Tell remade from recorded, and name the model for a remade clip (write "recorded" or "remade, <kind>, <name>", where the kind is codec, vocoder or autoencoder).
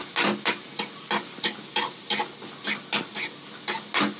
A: recorded